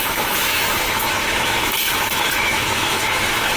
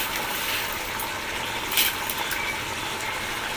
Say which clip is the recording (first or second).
second